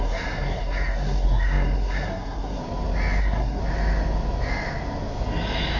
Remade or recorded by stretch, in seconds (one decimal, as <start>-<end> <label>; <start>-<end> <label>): 0.0-2.6 remade; 2.6-3.2 recorded; 3.2-3.6 remade; 3.6-5.8 recorded